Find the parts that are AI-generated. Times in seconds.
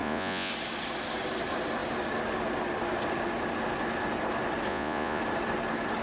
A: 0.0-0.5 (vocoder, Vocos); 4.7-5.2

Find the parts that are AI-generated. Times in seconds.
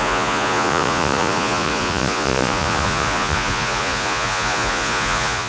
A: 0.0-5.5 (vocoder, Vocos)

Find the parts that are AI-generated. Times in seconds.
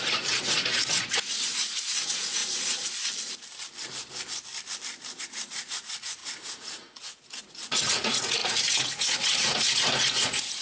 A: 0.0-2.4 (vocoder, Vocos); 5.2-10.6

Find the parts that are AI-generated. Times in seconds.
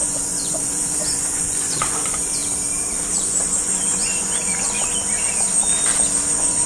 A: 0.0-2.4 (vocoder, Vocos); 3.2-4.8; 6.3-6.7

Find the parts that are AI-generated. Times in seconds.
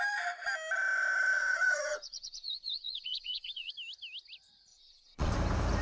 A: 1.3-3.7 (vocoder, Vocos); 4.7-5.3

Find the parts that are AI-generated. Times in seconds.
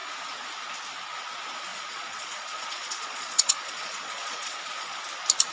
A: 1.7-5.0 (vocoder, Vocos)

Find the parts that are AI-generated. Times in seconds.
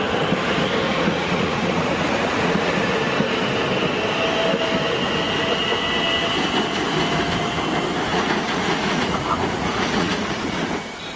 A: 0.9-2.7 (vocoder, Vocos); 8.1-10.7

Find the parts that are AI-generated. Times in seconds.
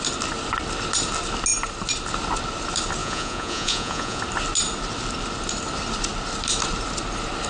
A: 3.0-4.2 (vocoder, Vocos)